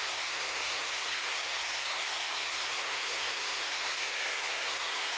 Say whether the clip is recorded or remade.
remade